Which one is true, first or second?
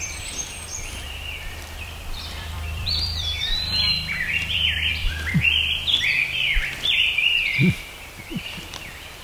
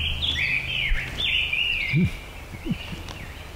second